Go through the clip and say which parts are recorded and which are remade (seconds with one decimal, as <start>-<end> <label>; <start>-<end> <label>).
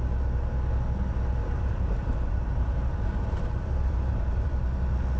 0.0-1.4 recorded; 1.4-4.5 remade; 4.5-5.2 recorded